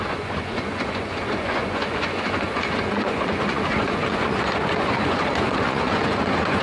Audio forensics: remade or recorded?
remade